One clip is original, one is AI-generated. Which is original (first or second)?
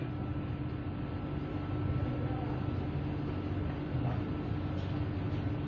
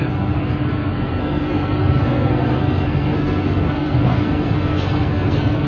first